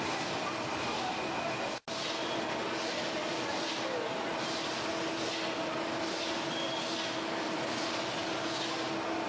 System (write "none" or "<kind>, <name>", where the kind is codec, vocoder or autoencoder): none